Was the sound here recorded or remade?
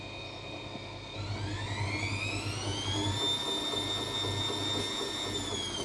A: recorded